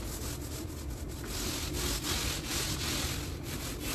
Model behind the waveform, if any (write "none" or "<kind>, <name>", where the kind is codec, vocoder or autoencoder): none